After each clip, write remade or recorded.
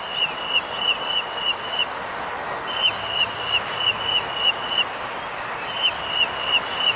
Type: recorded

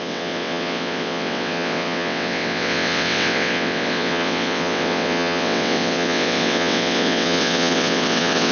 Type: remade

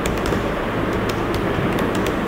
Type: recorded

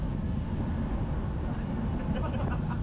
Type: recorded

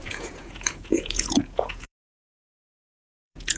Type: remade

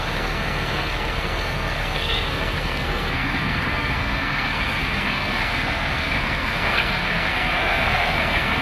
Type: remade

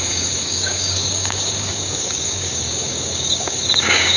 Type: remade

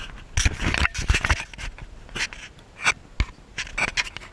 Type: recorded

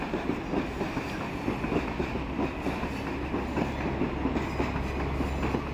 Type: recorded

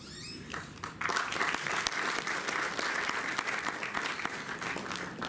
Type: recorded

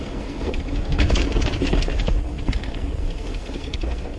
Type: remade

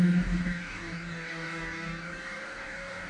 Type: remade